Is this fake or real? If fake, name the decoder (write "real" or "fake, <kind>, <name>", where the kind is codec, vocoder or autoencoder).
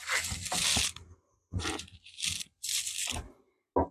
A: real